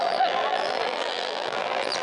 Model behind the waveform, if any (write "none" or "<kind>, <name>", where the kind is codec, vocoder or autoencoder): vocoder, BigVGAN v2